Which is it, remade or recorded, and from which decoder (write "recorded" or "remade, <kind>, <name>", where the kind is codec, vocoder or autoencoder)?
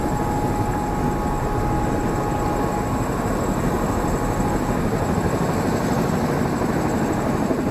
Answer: recorded